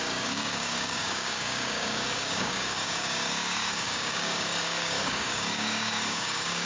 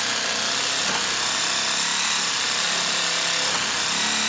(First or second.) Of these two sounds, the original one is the second